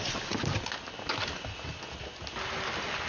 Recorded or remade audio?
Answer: recorded